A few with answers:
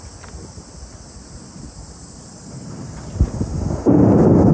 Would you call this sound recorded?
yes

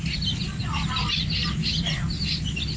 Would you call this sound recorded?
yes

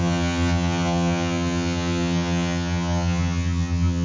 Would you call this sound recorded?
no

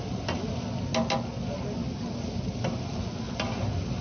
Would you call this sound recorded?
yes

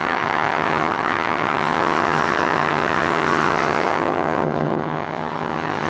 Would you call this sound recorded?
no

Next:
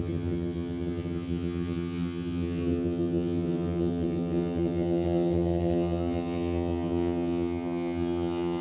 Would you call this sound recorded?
no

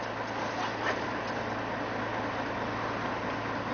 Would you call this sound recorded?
yes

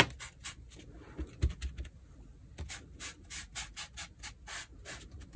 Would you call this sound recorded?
yes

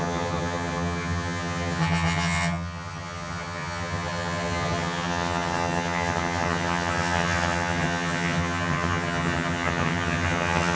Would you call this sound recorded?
no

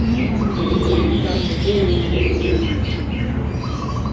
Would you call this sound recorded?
yes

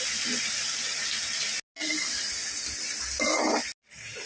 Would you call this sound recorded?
yes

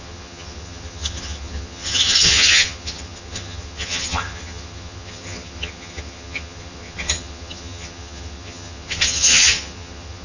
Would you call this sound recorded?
no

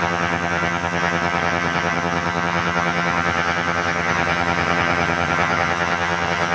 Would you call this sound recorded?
no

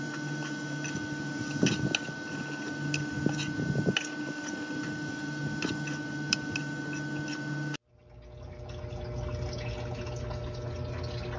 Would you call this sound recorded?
yes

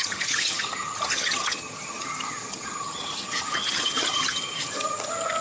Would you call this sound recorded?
no